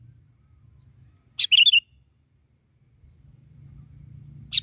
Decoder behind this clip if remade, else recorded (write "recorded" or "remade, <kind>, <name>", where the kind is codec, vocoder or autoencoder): recorded